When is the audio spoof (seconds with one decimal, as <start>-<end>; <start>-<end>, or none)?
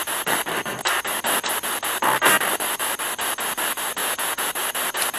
4.0-4.5